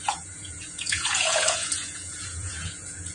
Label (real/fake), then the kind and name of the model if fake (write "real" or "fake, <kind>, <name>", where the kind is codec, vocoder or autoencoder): fake, vocoder, Vocos